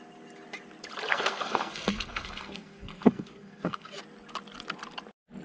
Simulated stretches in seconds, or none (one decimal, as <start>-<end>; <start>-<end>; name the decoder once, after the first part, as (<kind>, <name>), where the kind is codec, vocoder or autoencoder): 1.1-4.0 (codec, SNAC)